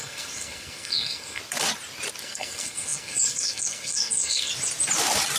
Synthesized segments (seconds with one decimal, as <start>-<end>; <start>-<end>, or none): 0.0-1.4; 2.2-4.5

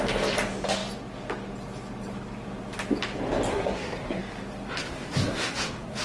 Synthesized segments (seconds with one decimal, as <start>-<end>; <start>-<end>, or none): 3.5-4.2; 4.8-6.0

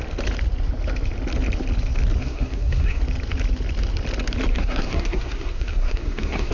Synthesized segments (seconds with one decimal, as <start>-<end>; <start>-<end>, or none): 2.2-3.0; 4.5-6.5

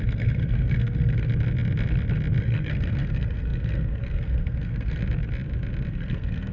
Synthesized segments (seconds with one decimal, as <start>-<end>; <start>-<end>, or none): 0.0-1.3; 2.4-5.0; 5.9-6.5

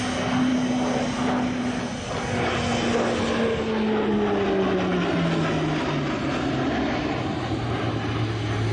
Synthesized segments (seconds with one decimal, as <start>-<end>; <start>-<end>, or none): none